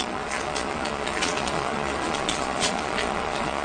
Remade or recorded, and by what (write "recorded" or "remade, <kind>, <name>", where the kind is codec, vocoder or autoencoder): remade, vocoder, Vocos